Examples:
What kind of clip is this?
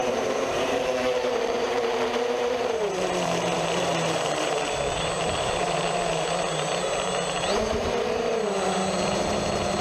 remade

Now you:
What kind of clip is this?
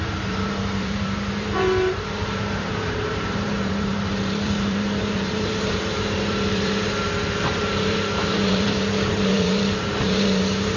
remade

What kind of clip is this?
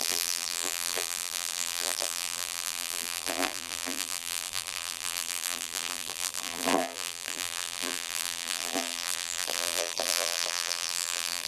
remade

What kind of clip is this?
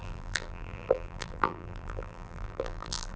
remade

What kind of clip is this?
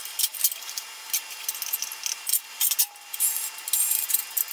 recorded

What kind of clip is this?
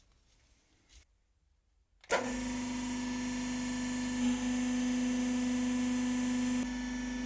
recorded